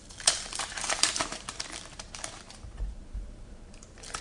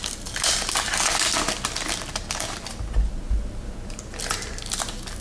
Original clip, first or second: second